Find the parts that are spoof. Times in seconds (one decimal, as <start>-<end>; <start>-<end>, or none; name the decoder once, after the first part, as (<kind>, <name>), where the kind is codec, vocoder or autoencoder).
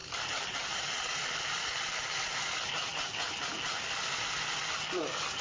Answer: 0.0-2.7 (vocoder, BigVGAN v2); 4.0-5.0